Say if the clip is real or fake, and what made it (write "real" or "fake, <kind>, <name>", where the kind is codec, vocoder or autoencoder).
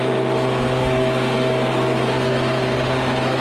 real